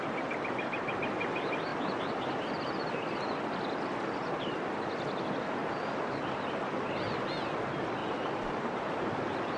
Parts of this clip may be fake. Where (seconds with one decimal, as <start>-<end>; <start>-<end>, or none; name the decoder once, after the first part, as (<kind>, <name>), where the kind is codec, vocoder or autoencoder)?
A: 5.6-6.1 (vocoder, BigVGAN v2); 8.0-9.2